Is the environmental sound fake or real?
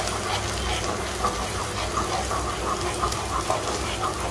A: real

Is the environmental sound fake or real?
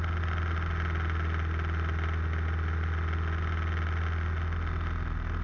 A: real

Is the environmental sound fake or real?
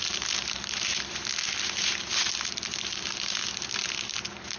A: real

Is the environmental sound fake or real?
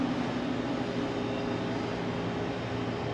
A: real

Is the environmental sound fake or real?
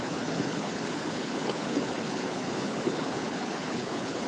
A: fake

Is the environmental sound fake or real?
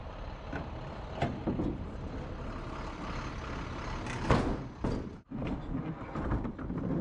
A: real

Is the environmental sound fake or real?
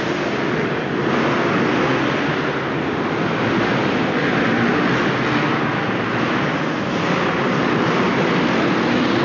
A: real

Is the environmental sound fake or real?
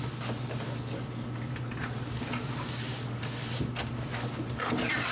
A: real